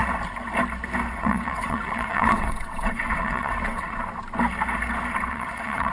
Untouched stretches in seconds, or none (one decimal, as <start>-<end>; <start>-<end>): 0.0-1.1; 4.0-5.3